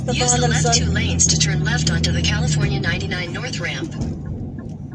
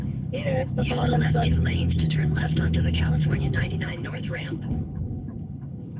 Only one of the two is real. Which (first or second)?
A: first